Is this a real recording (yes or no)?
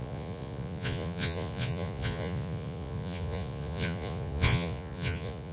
no